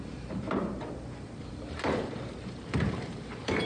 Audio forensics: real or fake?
fake